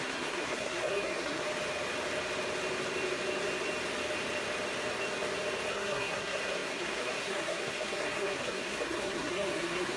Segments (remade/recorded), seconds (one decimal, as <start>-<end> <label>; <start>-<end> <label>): 0.0-1.4 remade; 1.4-5.7 recorded; 5.7-10.0 remade